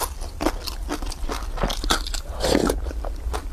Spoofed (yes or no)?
no